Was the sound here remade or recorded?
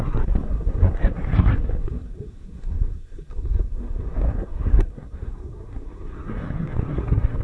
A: remade